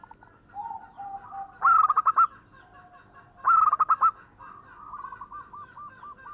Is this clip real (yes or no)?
yes